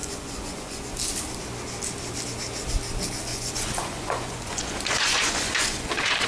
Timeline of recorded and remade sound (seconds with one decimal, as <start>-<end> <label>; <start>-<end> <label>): 0.0-0.9 remade; 0.9-3.3 recorded; 3.3-6.3 remade